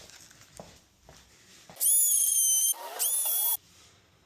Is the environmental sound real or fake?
real